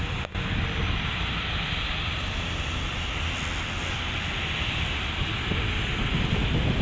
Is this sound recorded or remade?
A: recorded